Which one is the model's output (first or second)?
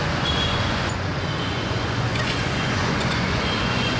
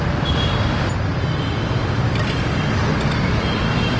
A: first